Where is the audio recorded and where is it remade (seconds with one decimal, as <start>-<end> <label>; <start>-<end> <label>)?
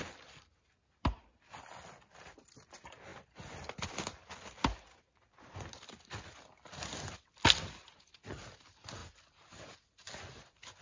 0.0-10.8 recorded